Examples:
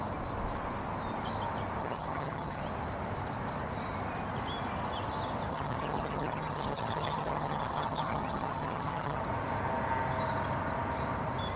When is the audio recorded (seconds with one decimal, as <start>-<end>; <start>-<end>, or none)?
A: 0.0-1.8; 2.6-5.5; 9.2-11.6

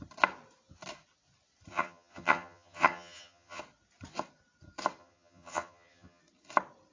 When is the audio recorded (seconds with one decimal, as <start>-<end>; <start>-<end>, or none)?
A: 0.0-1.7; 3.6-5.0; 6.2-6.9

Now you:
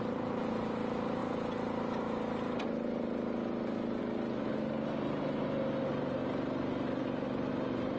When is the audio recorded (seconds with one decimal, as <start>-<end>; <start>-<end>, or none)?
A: 0.0-8.0

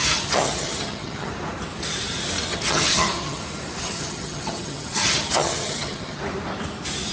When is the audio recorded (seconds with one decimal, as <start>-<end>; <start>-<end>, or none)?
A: 1.3-2.5; 3.4-3.8; 6.2-7.1